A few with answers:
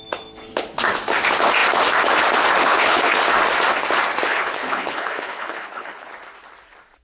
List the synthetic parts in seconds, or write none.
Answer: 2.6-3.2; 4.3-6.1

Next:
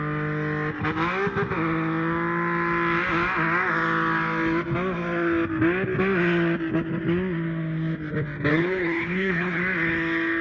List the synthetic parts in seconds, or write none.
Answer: 8.5-9.6

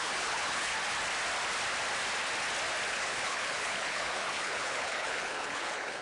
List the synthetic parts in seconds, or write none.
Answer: 0.0-0.7; 2.9-6.0

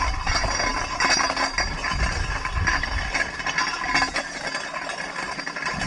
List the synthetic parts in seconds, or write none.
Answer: none

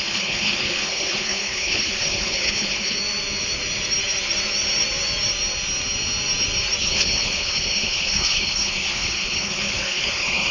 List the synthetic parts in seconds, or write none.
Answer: 0.0-3.0; 6.8-10.5

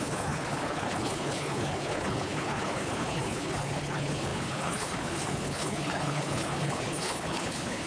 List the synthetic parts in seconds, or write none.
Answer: 0.0-7.9